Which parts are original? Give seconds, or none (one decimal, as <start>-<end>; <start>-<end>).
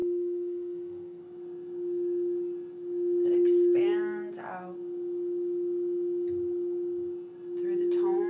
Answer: 1.2-8.3